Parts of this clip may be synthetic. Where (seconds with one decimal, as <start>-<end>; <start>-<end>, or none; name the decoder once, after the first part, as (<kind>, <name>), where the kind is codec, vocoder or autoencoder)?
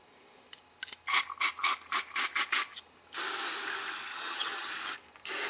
4.1-4.7 (vocoder, HiFi-GAN)